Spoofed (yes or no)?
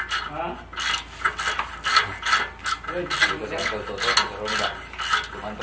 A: no